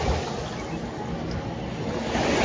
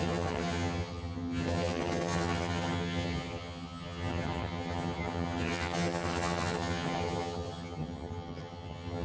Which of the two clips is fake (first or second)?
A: second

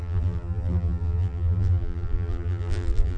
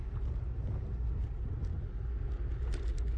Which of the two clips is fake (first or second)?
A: first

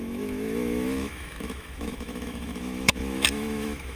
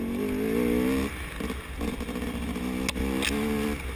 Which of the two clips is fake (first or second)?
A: first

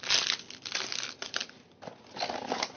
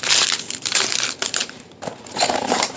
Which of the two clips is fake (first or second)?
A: second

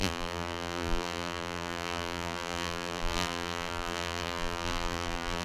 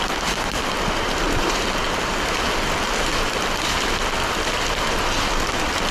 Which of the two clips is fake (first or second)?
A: first